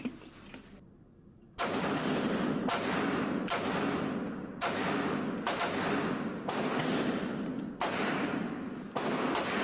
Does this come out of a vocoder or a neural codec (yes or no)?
no